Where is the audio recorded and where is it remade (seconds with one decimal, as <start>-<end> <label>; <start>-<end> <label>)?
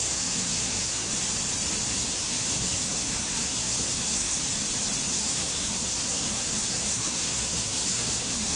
0.0-1.1 remade; 1.1-1.9 recorded; 1.9-4.4 remade; 4.4-5.1 recorded; 5.1-8.6 remade